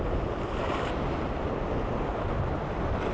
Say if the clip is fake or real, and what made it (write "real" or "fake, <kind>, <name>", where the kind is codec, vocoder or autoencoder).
real